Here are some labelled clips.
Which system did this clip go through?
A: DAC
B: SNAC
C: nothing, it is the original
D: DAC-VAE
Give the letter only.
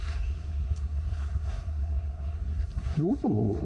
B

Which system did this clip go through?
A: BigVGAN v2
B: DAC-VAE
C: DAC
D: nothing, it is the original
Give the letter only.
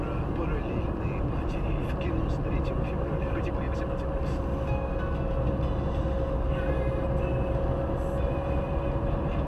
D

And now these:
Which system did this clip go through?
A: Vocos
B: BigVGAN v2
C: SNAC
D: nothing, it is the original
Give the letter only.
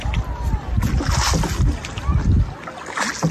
D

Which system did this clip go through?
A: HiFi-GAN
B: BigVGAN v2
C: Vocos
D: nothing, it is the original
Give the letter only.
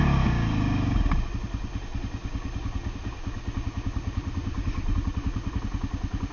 D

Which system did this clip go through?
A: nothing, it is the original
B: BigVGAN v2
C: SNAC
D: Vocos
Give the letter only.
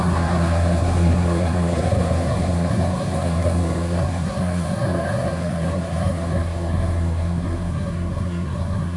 C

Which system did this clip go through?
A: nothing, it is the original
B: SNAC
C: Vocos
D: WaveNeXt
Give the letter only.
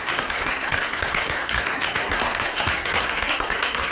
B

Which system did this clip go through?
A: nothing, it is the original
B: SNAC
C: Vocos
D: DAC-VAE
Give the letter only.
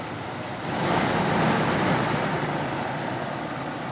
A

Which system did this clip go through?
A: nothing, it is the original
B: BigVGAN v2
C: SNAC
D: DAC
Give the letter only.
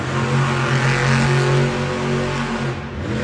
A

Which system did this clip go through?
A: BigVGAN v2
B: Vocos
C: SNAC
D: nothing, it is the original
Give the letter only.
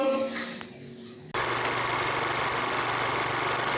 D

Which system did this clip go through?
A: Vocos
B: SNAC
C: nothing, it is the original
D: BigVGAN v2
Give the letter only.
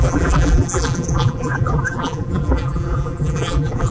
D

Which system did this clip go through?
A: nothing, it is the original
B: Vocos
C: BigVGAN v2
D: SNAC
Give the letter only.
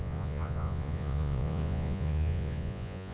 B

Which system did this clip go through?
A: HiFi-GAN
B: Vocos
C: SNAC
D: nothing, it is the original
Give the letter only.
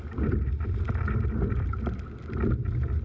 D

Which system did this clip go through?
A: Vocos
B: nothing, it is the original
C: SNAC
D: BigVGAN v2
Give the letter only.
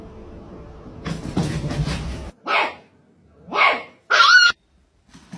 B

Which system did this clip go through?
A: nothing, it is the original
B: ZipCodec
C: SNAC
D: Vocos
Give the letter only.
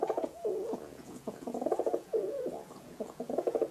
D